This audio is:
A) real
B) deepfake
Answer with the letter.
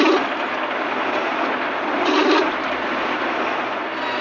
A